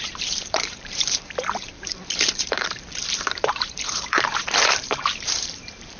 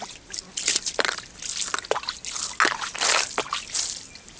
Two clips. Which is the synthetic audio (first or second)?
first